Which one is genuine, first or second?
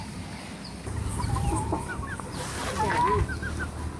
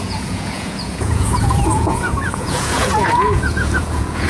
first